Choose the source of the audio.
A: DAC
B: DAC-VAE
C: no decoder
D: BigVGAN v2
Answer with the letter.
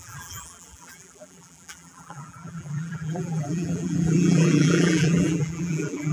D